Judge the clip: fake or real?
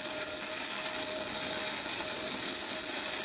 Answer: real